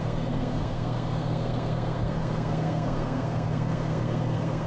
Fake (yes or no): yes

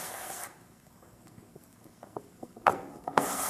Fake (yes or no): yes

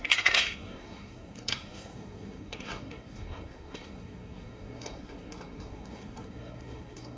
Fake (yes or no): yes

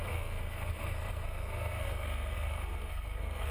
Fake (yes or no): yes